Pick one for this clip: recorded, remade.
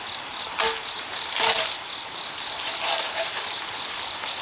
recorded